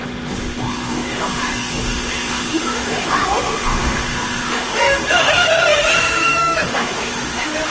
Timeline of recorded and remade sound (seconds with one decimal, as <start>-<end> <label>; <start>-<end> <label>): 0.0-7.7 remade